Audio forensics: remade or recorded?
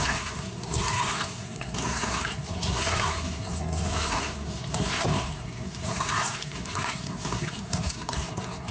remade